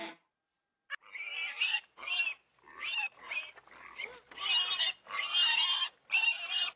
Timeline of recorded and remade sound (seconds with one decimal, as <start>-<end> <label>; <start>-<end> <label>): 0.0-1.3 recorded; 1.3-1.8 remade; 1.8-2.5 recorded; 2.5-3.3 remade; 3.3-6.8 recorded